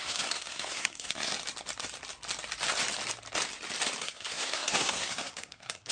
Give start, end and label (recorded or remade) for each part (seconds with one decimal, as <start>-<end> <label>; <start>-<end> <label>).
0.0-1.3 remade; 1.3-4.0 recorded; 4.0-5.9 remade